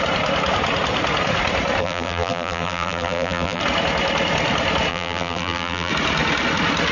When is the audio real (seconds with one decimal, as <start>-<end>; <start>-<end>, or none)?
0.0-1.8; 3.6-4.9; 5.9-6.9